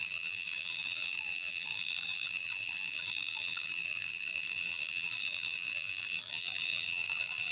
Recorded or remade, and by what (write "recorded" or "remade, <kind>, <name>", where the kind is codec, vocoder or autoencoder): remade, vocoder, BigVGAN v2